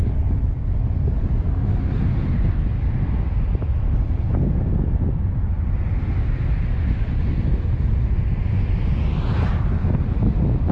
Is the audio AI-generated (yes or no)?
no